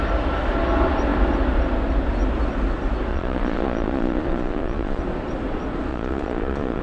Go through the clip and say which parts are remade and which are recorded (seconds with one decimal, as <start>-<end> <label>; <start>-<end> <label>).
0.0-3.1 recorded; 3.1-5.0 remade; 5.0-5.9 recorded; 5.9-6.8 remade